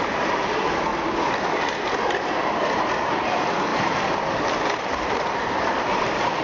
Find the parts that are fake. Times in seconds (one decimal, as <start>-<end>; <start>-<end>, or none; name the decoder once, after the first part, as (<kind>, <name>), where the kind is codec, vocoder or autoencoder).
0.0-0.9 (vocoder, BigVGAN v2); 2.2-3.7; 4.3-6.4